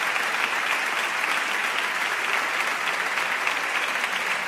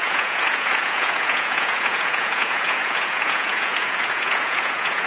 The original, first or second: first